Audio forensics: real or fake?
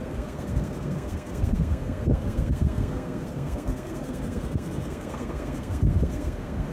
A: fake